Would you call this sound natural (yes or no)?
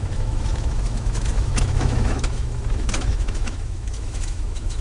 no